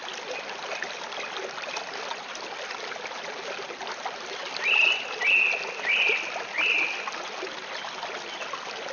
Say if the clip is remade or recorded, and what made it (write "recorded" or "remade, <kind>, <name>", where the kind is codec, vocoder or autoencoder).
recorded